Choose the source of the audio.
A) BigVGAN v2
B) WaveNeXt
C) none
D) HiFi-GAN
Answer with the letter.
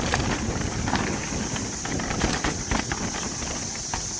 C